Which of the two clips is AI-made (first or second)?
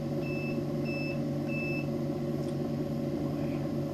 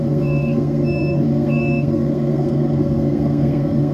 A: second